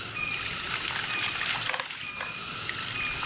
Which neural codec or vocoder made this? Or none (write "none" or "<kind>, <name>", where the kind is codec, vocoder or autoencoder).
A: none